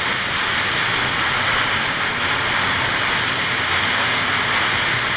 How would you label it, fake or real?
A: real